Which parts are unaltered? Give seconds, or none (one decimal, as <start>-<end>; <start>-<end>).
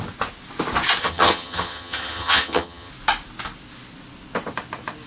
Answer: 0.0-1.0; 2.9-5.1